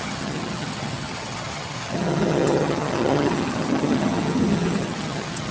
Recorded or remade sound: remade